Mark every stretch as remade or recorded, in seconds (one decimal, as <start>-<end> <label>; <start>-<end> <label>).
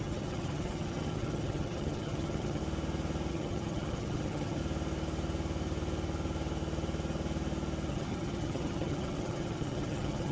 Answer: 0.0-2.6 remade; 2.6-3.3 recorded; 3.3-4.6 remade; 4.6-7.9 recorded; 7.9-10.3 remade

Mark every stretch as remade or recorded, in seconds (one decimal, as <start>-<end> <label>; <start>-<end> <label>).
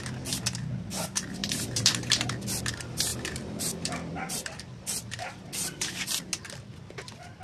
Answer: 0.0-1.4 recorded; 1.4-2.6 remade; 2.6-3.1 recorded; 3.1-6.2 remade; 6.2-7.4 recorded